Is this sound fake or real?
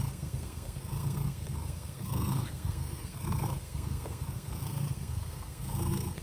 fake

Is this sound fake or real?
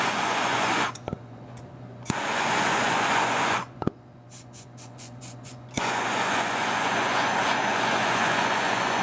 fake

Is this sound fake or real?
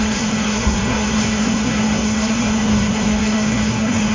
fake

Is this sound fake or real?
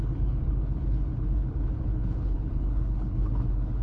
fake